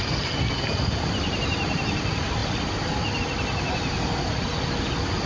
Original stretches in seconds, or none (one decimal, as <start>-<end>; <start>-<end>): 0.0-5.3